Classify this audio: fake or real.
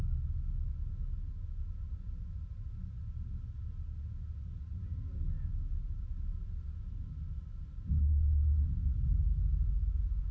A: real